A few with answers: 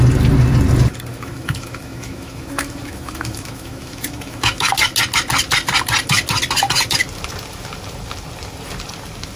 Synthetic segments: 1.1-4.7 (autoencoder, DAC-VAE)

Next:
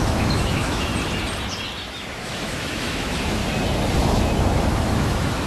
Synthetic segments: 0.0-0.9 (autoencoder, DAC-VAE); 2.2-3.4; 4.5-5.5

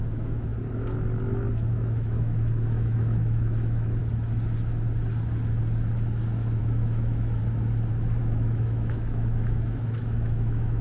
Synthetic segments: 0.0-0.5 (autoencoder, DAC-VAE); 1.7-4.0; 6.6-7.4; 8.2-10.8

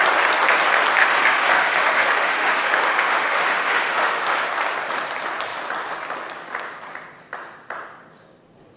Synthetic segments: 1.0-4.5 (autoencoder, DAC-VAE)

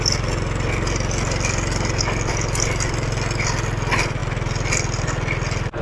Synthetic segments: none